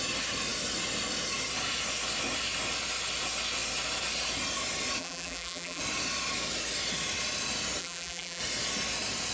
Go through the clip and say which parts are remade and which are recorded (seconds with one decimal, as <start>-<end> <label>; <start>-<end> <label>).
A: 0.0-5.0 recorded; 5.0-5.8 remade; 5.8-7.8 recorded; 7.8-8.4 remade; 8.4-9.3 recorded